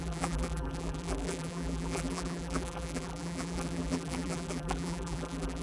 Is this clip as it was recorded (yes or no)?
no